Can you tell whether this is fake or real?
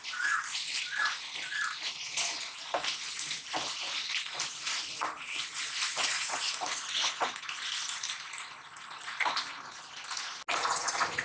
real